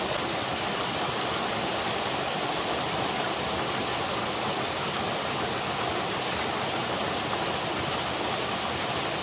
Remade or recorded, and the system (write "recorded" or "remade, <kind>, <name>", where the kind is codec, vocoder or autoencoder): recorded